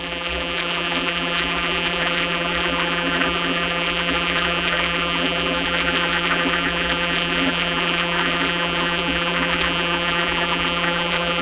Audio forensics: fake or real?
fake